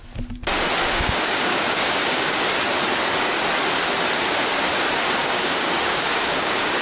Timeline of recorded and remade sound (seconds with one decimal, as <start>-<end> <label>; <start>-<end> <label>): 0.0-0.8 recorded; 0.8-2.4 remade; 2.4-5.2 recorded; 5.2-6.8 remade